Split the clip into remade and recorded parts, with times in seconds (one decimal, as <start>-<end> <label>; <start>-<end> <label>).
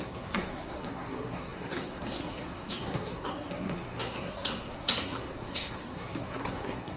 0.0-7.0 remade